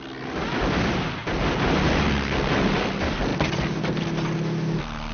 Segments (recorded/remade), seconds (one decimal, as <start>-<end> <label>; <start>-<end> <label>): 0.0-5.1 recorded